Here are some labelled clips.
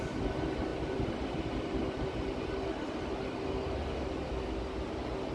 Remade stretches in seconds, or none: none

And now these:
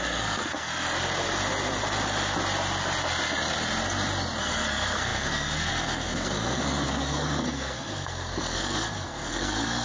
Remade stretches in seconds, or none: 0.0-0.7 (codec, SNAC); 4.4-9.8

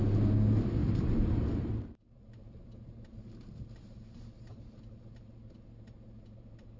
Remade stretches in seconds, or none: 0.8-4.8 (vocoder, BigVGAN v2)

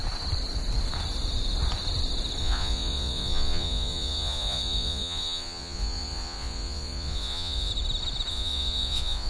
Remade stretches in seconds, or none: 2.4-7.7 (vocoder, Vocos); 8.3-9.3